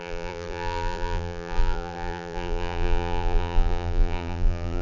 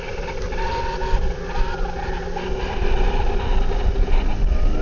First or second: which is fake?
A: first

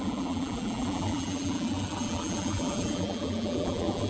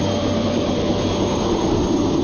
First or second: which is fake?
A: first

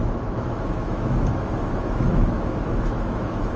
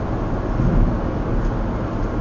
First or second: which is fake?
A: first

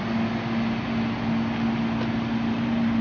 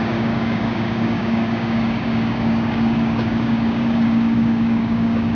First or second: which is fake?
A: second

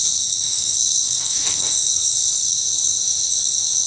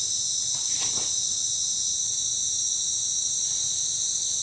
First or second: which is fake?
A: first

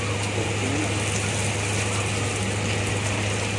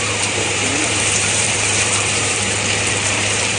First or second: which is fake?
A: second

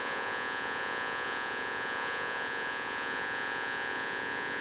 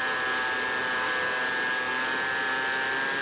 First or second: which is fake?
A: first